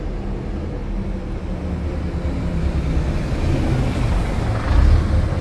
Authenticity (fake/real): real